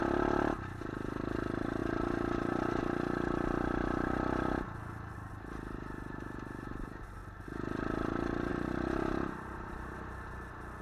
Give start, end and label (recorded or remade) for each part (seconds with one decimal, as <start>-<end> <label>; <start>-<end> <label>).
0.0-10.8 recorded